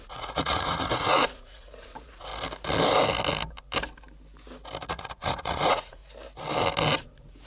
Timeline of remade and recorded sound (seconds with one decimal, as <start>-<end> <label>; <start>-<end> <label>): 0.0-2.3 remade; 2.3-4.9 recorded; 4.9-6.0 remade; 6.0-7.0 recorded; 7.0-7.5 remade